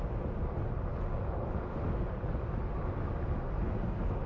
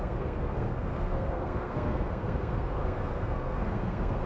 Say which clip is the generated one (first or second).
second